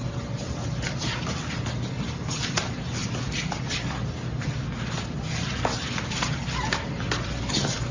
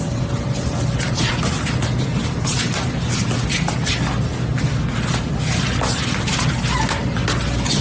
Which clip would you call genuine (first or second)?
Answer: second